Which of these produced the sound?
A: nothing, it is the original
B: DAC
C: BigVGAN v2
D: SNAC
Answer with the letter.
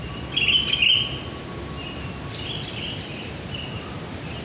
A